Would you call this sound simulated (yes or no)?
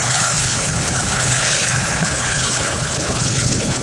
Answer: yes